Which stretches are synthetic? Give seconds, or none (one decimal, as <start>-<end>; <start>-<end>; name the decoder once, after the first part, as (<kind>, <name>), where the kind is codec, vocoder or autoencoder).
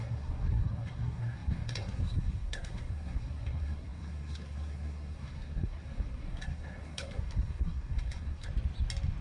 0.0-8.5 (codec, SNAC)